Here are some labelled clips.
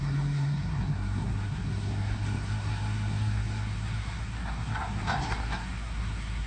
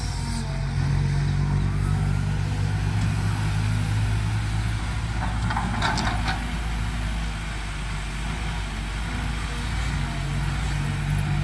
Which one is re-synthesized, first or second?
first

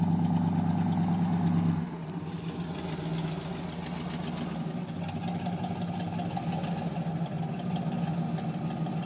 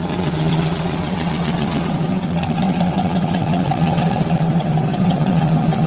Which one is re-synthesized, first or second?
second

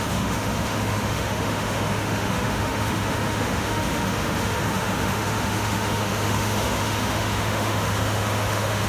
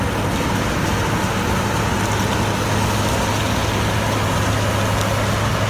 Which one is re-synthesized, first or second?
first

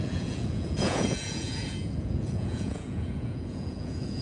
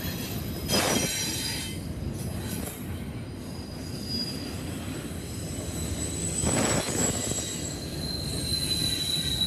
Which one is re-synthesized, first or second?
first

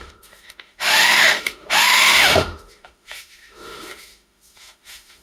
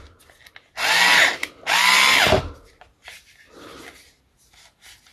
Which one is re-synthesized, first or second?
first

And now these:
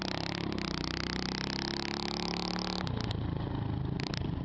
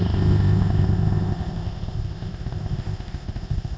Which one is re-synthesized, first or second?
second